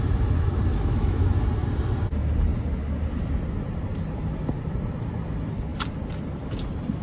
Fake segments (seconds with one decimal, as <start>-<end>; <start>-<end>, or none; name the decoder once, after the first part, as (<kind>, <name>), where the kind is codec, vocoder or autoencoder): 0.7-1.4 (autoencoder, DAC-VAE)